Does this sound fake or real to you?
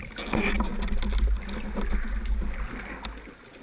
real